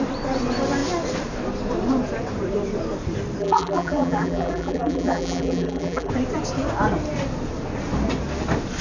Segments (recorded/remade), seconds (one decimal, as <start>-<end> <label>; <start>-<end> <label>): 0.0-3.4 recorded; 3.4-6.1 remade; 6.1-8.8 recorded